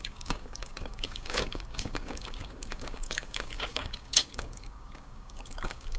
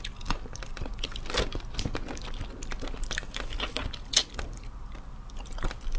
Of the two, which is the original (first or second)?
second